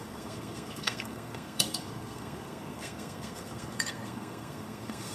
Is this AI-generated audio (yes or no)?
yes